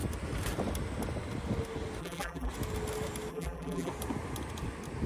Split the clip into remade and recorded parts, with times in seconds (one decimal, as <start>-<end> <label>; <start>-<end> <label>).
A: 0.0-2.0 recorded; 2.0-2.5 remade; 2.5-3.3 recorded; 3.3-3.9 remade; 3.9-5.1 recorded